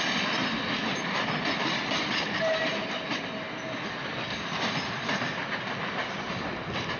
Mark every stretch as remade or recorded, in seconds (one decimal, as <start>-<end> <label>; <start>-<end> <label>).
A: 0.0-7.0 recorded